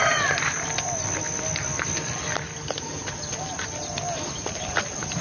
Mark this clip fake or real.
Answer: real